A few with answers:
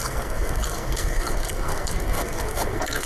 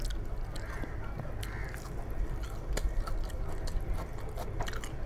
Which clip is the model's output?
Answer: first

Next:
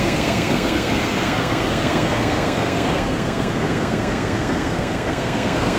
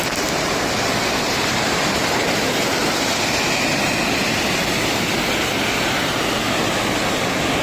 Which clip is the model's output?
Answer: first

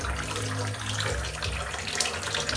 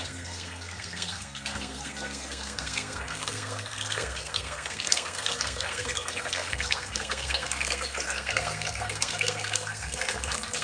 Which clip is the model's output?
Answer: second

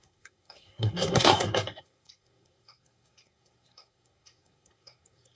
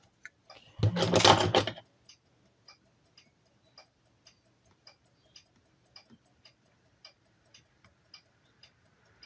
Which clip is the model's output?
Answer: first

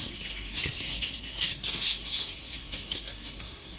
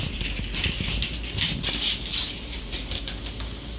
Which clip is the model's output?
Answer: first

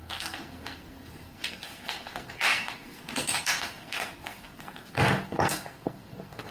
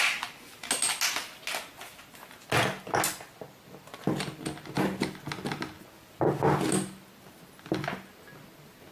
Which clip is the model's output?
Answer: first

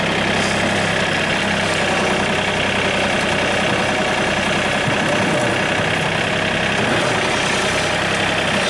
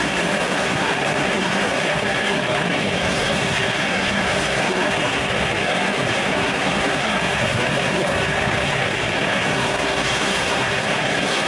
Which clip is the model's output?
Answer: second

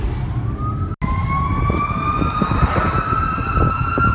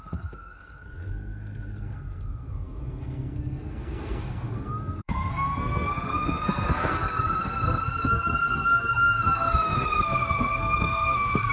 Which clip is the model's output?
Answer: second